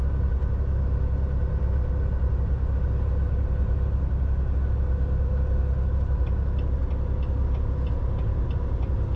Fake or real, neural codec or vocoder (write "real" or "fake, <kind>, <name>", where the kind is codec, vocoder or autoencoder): real